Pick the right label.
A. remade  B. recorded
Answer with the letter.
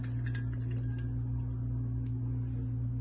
B